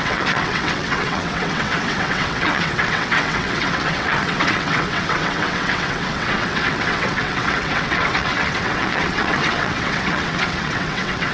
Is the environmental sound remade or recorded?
remade